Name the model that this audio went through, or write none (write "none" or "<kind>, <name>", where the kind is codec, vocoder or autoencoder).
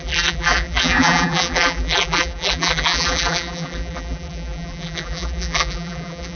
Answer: vocoder, BigVGAN v2